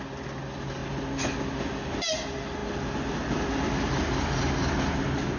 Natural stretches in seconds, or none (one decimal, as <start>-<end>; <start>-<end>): 0.0-5.4